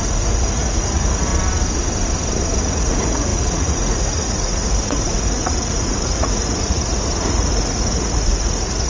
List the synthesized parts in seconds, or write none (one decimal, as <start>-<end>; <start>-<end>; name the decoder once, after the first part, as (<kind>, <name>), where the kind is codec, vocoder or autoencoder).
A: 0.0-1.3 (vocoder, Vocos); 2.6-8.9